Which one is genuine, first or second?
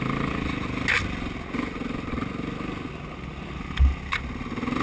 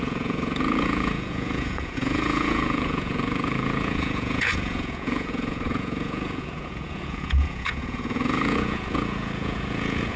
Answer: first